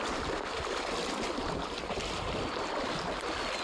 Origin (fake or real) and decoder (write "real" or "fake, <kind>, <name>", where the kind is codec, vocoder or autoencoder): real